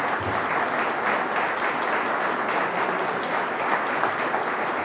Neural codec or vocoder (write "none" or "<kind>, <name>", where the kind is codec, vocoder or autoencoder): none